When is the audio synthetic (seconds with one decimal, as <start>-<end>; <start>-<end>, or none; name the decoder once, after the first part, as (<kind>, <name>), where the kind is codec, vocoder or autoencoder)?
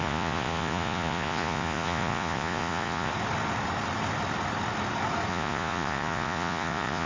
0.0-3.1 (vocoder, Vocos); 5.3-7.1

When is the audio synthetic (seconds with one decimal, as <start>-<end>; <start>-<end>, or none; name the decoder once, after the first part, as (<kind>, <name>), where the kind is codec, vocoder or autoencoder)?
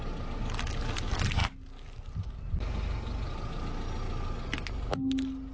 none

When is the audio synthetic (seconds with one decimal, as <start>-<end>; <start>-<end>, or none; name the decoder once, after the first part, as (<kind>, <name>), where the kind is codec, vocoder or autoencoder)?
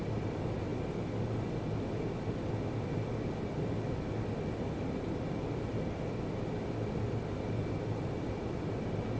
none